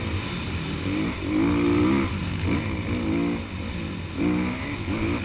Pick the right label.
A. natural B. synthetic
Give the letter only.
A